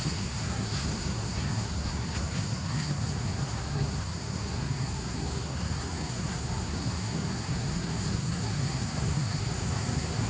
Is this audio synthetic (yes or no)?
yes